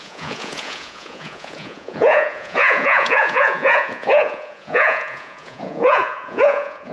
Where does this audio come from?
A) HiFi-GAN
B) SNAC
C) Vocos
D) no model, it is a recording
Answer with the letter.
C